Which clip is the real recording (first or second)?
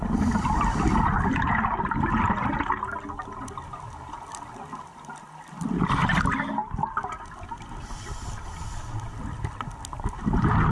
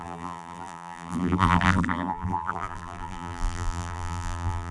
first